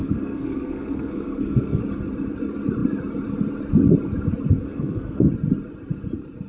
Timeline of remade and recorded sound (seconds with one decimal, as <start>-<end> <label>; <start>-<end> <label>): 0.0-1.8 remade; 1.8-4.7 recorded; 4.7-5.3 remade; 5.3-6.5 recorded